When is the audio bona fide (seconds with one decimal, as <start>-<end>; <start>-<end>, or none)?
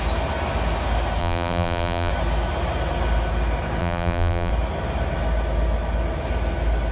0.0-1.2; 2.1-3.8; 4.5-6.9